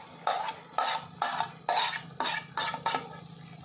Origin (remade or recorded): recorded